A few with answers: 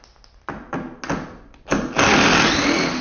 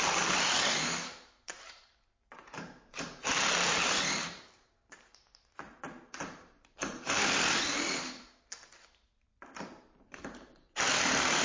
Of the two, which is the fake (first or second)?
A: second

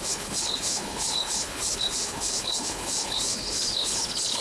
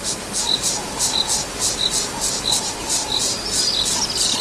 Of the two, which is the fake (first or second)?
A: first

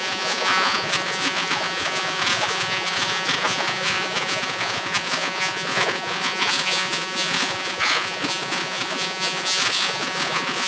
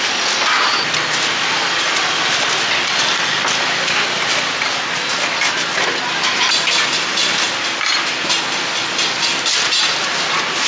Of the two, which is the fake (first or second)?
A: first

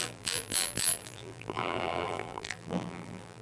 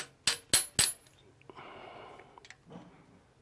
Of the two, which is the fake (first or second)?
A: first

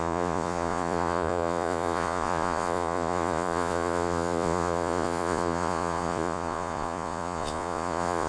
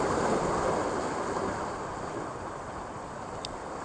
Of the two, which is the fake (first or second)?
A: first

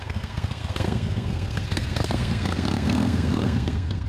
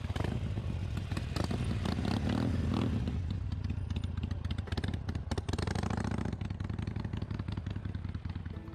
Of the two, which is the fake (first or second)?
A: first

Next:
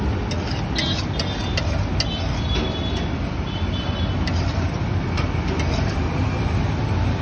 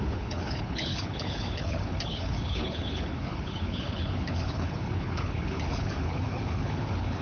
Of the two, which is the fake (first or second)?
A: second